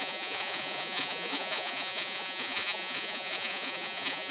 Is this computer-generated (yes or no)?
yes